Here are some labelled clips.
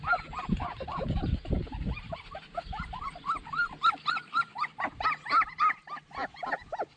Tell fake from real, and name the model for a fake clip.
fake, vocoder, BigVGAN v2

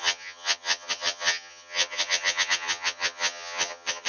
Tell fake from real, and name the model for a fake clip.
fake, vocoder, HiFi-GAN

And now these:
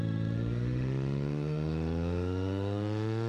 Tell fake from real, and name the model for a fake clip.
fake, autoencoder, DAC-VAE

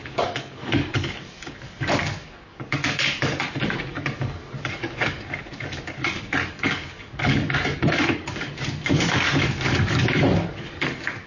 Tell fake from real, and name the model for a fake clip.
fake, codec, DAC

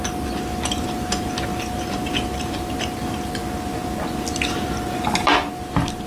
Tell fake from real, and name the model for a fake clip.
real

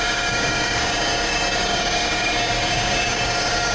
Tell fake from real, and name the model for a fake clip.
fake, codec, DAC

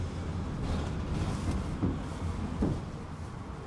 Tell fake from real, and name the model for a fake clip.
real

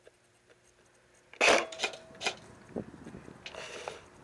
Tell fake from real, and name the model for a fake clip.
real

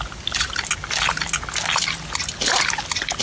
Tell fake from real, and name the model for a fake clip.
real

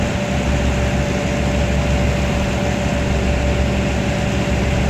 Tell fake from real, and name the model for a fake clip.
real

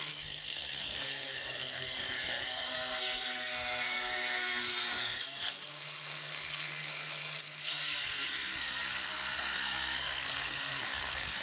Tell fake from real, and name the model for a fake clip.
fake, codec, SNAC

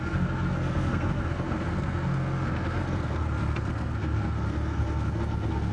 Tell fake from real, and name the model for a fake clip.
fake, codec, SNAC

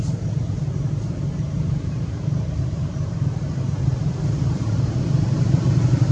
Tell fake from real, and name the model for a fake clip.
fake, vocoder, BigVGAN v2